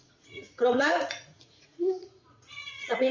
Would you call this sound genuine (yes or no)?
no